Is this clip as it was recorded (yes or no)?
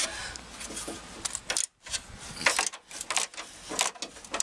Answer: yes